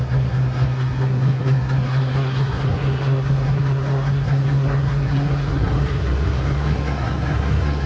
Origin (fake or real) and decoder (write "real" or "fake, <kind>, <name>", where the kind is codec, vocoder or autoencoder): fake, codec, SNAC